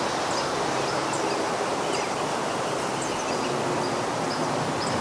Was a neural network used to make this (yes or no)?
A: no